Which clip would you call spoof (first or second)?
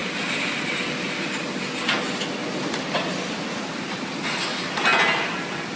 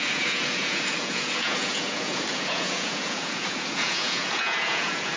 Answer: second